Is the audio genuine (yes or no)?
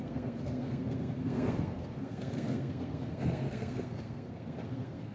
no